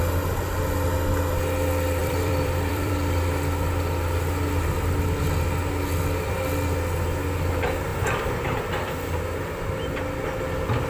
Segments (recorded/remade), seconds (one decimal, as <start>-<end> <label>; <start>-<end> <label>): 0.0-2.0 recorded; 2.0-2.9 remade; 2.9-10.9 recorded